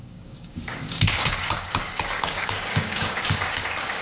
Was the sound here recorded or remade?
remade